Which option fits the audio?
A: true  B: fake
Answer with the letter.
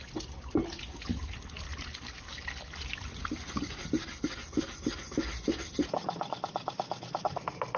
A